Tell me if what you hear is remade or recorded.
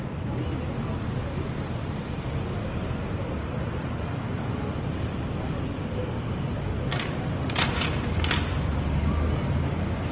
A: recorded